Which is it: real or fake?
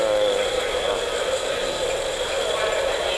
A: fake